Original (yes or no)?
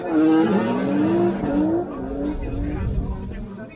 yes